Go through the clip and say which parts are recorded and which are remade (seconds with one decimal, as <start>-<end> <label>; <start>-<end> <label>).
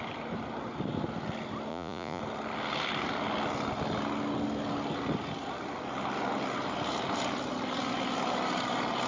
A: 0.0-1.7 recorded; 1.7-2.2 remade; 2.2-9.1 recorded